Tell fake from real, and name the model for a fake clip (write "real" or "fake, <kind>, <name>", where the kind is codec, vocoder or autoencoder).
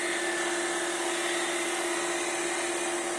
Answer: real